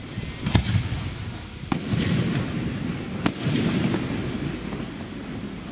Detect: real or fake real